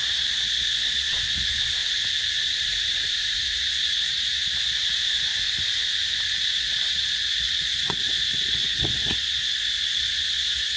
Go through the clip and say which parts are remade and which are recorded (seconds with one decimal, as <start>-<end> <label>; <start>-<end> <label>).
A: 0.0-1.8 remade; 1.8-3.4 recorded; 3.4-5.3 remade; 5.3-6.4 recorded; 6.4-10.8 remade